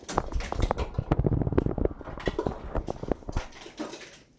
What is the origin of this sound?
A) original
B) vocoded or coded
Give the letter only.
A